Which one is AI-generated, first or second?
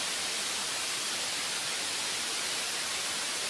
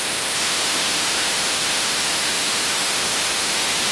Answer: second